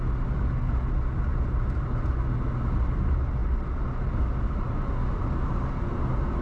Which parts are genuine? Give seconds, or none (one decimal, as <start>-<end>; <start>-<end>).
0.0-6.4